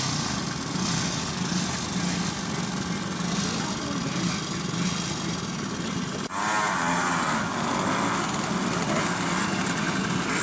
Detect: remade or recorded recorded